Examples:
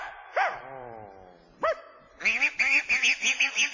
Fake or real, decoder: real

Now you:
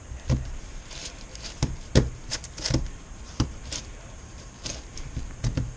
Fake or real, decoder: fake, vocoder, BigVGAN v2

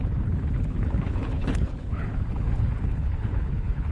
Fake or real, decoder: fake, codec, HILCodec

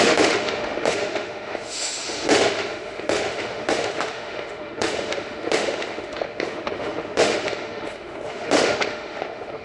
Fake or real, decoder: fake, autoencoder, DAC-VAE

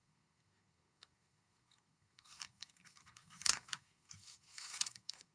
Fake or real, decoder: fake, codec, SNAC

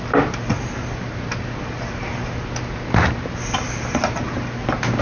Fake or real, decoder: real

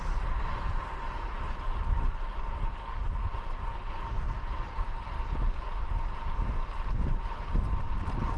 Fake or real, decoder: real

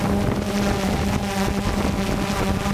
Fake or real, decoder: real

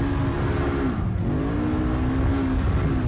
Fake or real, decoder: real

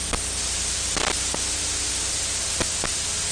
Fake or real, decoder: real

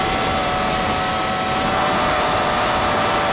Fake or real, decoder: real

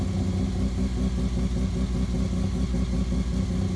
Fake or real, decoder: real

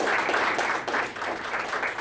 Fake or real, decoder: real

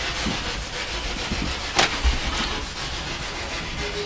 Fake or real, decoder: real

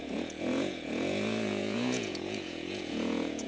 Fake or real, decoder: fake, vocoder, Vocos